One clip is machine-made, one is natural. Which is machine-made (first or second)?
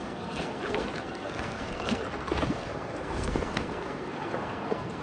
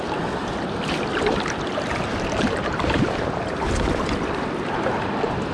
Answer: first